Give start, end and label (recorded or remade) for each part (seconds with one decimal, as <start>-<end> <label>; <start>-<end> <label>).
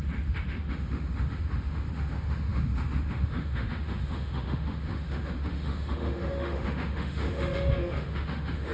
0.0-8.7 remade